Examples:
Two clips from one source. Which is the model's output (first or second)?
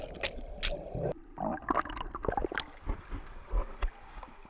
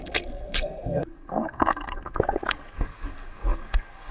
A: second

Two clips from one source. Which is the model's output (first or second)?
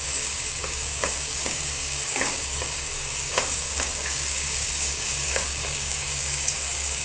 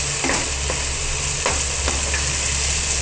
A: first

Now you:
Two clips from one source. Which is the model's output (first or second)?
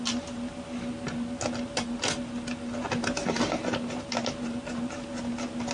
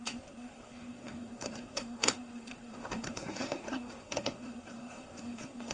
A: second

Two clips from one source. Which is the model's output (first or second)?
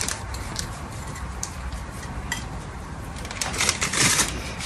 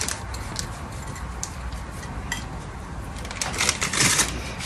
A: first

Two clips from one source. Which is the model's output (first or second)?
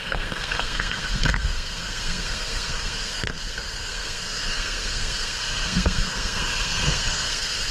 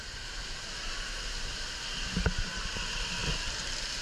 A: first